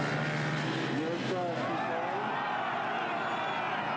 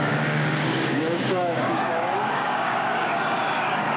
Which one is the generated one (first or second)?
second